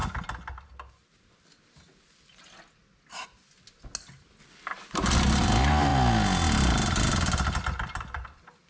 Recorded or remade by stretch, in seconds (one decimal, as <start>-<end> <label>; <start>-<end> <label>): 0.0-8.7 recorded